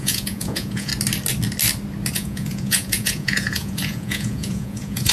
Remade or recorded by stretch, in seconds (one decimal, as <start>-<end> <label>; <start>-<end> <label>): 0.0-0.9 remade; 0.9-2.1 recorded; 2.1-5.1 remade